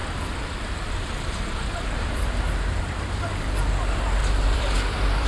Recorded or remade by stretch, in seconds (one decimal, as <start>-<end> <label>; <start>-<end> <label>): 0.0-4.2 recorded; 4.2-5.3 remade